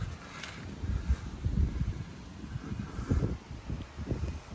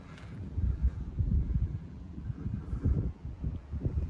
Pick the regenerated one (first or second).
second